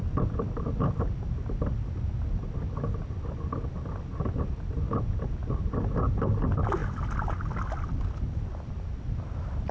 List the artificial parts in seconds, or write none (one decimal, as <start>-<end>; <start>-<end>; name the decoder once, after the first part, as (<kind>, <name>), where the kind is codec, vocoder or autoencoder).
none